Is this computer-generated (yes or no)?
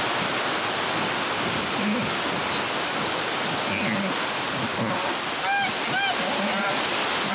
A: no